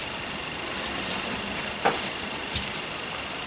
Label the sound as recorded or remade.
remade